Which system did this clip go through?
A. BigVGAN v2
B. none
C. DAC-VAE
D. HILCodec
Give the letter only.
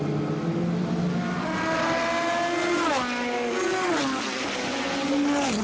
B